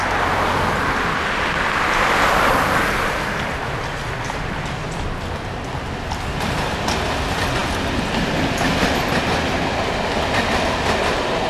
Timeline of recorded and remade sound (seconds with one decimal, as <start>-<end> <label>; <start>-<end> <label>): 0.0-11.5 recorded